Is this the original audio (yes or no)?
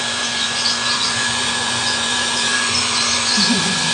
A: no